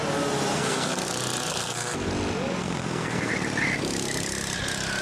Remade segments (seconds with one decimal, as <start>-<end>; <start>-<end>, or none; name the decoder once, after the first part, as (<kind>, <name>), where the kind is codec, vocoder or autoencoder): 0.5-1.1 (codec, SNAC); 1.5-2.1; 2.6-3.3